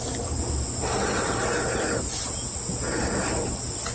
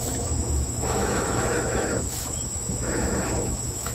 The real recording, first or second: first